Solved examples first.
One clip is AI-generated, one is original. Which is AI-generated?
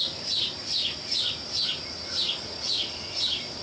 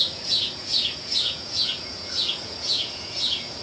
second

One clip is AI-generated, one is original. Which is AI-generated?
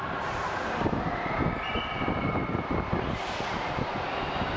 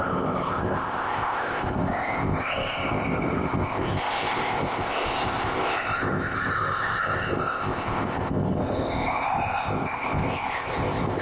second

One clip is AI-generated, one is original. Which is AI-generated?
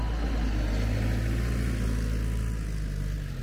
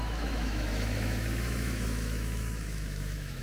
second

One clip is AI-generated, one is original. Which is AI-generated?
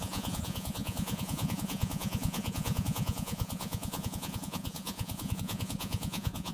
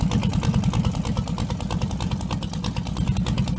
first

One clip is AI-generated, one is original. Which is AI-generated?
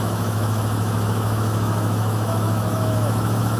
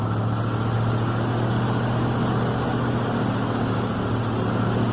first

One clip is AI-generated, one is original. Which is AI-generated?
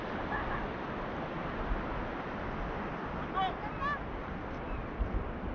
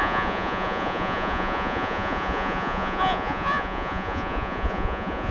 second